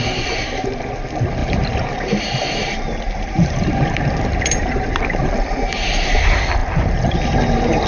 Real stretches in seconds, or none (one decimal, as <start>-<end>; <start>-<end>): 0.0-1.4; 5.3-7.9